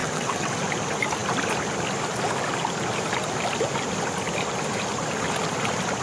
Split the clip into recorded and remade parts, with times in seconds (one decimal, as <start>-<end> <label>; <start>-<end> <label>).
0.0-0.5 remade; 0.5-6.0 recorded